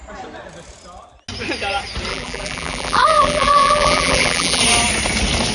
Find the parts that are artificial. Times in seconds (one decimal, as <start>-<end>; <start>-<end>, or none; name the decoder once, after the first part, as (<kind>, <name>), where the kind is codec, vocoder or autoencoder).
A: 2.1-4.6 (vocoder, BigVGAN v2)